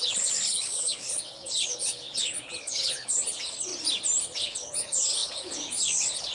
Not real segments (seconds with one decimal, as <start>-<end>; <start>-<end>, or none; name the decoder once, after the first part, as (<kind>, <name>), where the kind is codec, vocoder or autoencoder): 0.0-3.7 (codec, HILCodec); 4.2-6.3